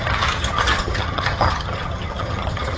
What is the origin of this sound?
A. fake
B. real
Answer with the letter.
A